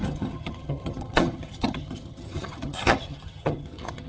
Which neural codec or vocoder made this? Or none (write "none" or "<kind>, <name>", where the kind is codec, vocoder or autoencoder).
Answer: vocoder, HiFi-GAN